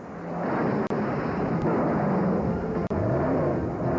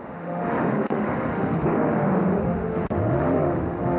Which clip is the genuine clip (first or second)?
first